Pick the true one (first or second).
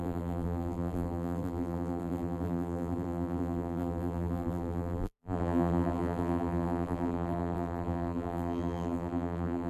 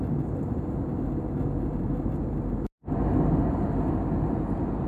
second